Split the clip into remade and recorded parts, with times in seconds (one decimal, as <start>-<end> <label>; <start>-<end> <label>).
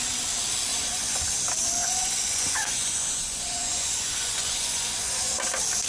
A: 0.0-0.7 recorded; 0.7-1.3 remade; 1.3-1.8 recorded; 1.8-5.3 remade; 5.3-5.9 recorded